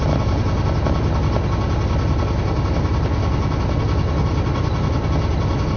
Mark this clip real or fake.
real